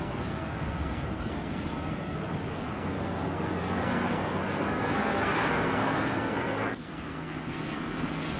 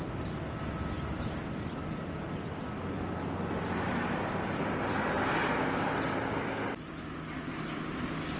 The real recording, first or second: second